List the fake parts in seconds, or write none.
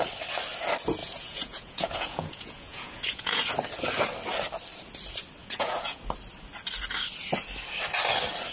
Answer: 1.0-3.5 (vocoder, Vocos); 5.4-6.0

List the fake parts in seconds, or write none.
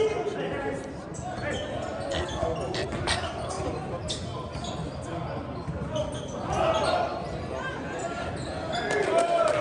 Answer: none